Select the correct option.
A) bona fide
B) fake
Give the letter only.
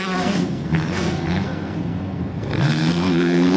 B